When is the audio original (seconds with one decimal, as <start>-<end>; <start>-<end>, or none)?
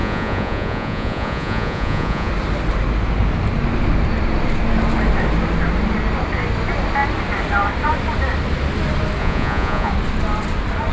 2.3-9.2; 9.9-10.9